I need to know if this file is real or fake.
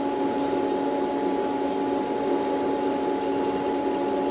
real